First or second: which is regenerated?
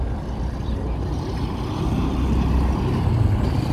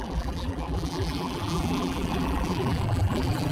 second